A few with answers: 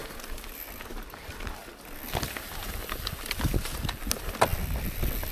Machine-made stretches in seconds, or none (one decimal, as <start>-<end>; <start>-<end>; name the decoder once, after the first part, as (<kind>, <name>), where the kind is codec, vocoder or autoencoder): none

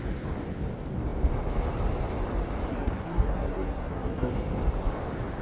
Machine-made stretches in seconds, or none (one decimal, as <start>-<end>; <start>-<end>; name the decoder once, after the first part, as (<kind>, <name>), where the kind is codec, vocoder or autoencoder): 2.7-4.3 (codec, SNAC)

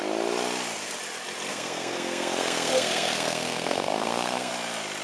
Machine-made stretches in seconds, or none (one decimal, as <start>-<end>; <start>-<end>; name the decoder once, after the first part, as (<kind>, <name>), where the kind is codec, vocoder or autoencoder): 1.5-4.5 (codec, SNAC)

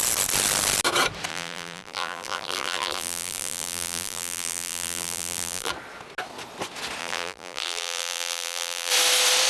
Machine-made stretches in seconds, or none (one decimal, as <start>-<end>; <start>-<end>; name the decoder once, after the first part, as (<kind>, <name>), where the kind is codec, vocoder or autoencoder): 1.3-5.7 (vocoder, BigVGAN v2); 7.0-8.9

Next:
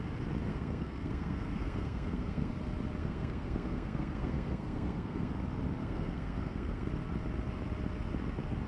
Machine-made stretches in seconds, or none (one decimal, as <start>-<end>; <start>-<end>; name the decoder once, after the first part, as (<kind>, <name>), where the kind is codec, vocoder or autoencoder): 0.5-2.5 (codec, SNAC); 3.0-5.3; 5.8-6.9

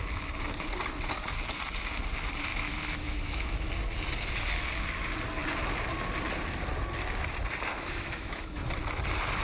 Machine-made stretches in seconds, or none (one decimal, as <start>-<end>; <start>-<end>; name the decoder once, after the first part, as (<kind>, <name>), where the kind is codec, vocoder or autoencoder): 2.5-3.7 (autoencoder, DAC-VAE); 7.7-8.6

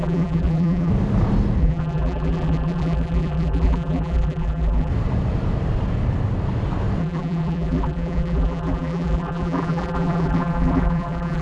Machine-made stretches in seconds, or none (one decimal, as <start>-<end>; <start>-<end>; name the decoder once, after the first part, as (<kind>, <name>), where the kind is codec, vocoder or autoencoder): 0.0-0.9 (vocoder, BigVGAN v2); 1.6-4.9; 7.0-11.4